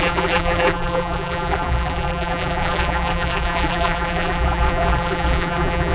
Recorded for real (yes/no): no